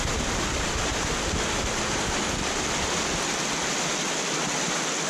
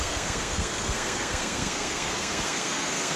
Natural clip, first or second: first